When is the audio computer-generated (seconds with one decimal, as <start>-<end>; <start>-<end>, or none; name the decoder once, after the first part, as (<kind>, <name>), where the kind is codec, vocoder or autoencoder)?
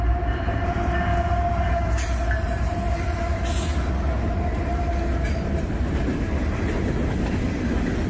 none